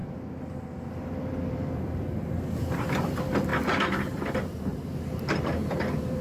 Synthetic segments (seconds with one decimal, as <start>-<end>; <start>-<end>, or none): 1.0-4.7; 5.3-6.2